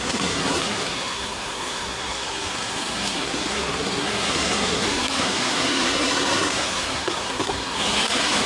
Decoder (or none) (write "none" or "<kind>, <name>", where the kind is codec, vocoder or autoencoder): codec, SNAC